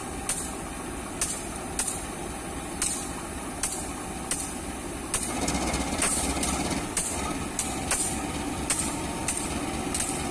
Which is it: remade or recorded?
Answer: recorded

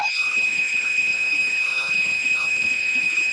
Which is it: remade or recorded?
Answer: remade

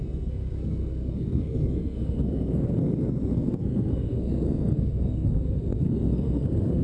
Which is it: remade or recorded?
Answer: remade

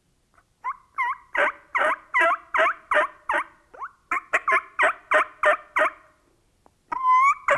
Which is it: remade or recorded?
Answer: recorded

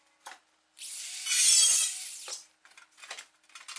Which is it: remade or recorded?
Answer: recorded